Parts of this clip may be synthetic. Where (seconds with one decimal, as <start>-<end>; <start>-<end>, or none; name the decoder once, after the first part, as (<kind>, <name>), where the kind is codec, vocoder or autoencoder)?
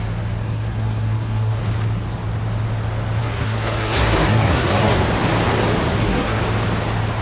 0.4-1.6 (codec, SNAC); 3.2-5.0; 5.9-6.4